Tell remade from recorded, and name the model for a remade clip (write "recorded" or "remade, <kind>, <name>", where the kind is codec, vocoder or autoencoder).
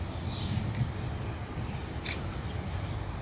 recorded